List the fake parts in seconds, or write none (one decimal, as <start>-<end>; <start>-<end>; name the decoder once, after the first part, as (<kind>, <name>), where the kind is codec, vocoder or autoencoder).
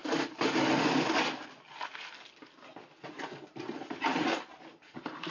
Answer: 4.1-5.3 (vocoder, BigVGAN v2)